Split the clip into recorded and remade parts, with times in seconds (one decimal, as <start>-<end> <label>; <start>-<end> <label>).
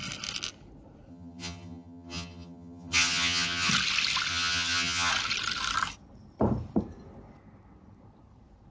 0.0-1.1 recorded; 1.1-3.7 remade; 3.7-4.3 recorded; 4.3-5.1 remade; 5.1-8.7 recorded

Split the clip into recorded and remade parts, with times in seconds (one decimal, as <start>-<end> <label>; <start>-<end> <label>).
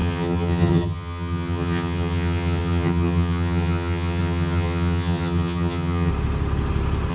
0.0-6.1 remade; 6.1-7.1 recorded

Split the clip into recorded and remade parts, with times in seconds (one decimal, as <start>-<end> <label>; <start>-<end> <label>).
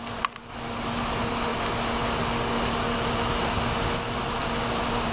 0.0-5.1 recorded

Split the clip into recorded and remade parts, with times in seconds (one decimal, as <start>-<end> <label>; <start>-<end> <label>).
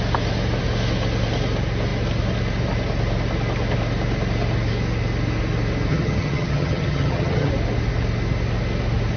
0.0-5.9 recorded; 5.9-7.5 remade; 7.5-9.2 recorded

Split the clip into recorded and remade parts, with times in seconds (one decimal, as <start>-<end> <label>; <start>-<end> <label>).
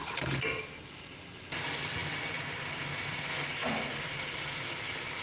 0.0-5.2 recorded